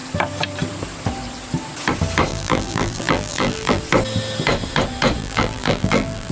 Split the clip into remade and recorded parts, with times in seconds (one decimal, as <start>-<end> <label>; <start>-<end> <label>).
0.0-2.3 recorded; 2.3-3.8 remade; 3.8-5.2 recorded; 5.2-6.3 remade